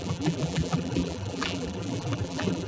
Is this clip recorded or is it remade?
remade